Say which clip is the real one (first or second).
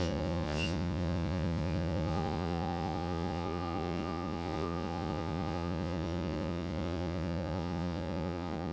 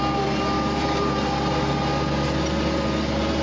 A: second